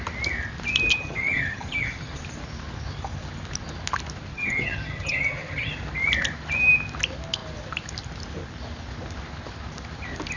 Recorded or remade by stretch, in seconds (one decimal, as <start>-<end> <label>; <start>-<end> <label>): 0.0-0.9 recorded; 0.9-2.2 remade; 2.2-4.3 recorded; 4.3-5.7 remade; 5.7-10.4 recorded